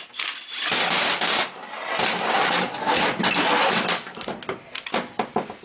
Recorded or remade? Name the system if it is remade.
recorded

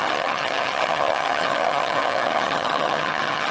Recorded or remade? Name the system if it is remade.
remade, vocoder, HiFi-GAN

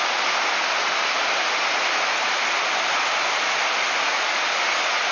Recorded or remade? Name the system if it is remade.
recorded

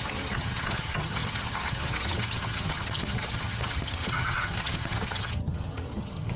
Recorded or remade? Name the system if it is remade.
remade, vocoder, HiFi-GAN